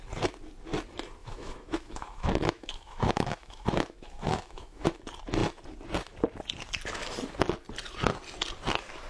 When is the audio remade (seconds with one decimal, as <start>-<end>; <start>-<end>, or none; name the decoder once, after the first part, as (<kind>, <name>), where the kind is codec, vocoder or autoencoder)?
1.2-5.0 (autoencoder, DAC-VAE)